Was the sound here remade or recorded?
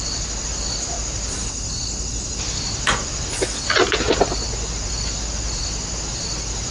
recorded